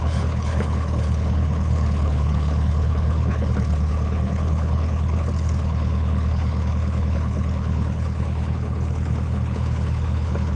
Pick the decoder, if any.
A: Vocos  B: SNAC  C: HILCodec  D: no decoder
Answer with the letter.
C